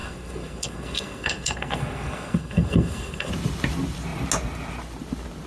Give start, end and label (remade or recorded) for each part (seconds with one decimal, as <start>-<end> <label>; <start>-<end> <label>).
0.0-3.3 remade; 3.3-5.5 recorded